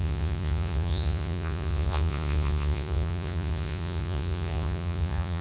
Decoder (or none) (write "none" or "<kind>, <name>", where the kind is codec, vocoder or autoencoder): vocoder, Vocos